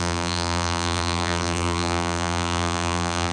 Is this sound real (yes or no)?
no